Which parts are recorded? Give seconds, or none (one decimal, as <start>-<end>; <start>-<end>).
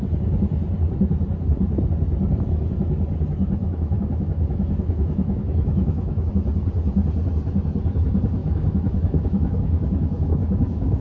0.0-3.6; 6.3-8.4